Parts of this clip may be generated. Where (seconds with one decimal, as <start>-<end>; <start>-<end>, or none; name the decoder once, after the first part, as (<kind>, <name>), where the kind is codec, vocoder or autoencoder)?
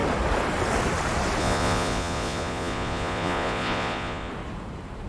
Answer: 1.4-4.3 (vocoder, Vocos)